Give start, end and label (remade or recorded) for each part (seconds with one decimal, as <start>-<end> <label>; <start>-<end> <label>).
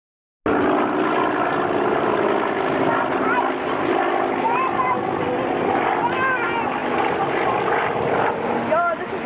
0.0-9.3 recorded